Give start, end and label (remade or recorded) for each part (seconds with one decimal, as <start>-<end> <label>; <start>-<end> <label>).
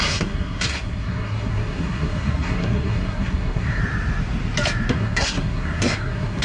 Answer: 0.0-3.8 remade; 3.8-4.9 recorded; 4.9-6.4 remade